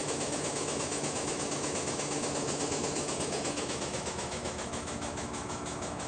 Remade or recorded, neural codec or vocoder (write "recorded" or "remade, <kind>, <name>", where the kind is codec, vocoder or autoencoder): remade, autoencoder, DAC-VAE